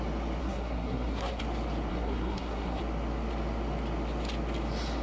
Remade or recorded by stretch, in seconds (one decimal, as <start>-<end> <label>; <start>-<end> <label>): 0.0-0.4 recorded; 0.4-1.4 remade; 1.4-1.9 recorded; 1.9-2.8 remade; 2.8-5.0 recorded